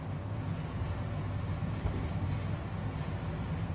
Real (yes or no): yes